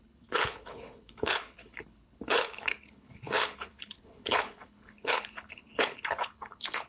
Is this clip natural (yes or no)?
no